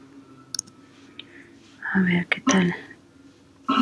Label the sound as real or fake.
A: real